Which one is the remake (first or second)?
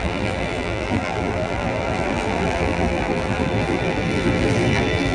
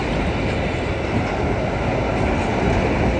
first